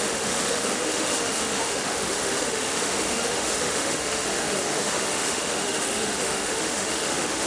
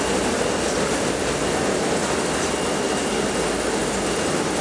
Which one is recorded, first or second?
second